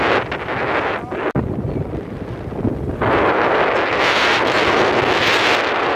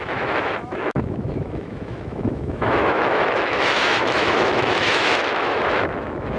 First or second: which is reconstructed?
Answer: second